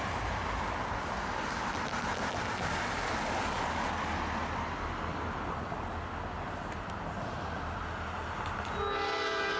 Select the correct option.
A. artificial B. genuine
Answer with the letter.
B